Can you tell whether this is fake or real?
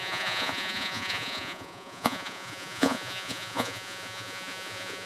fake